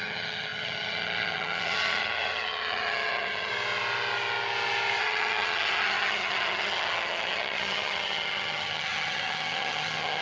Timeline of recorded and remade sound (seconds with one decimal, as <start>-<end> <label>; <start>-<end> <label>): 0.0-3.5 remade; 3.5-5.0 recorded; 5.0-10.2 remade